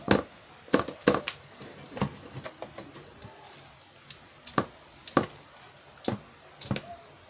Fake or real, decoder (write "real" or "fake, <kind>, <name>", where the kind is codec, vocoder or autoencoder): real